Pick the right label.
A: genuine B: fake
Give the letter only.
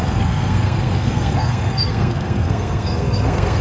B